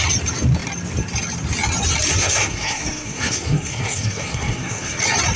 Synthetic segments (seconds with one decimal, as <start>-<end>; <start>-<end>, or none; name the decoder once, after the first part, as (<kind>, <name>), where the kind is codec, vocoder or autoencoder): 2.2-5.0 (codec, SNAC)